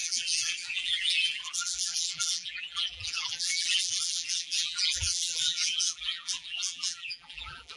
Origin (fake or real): fake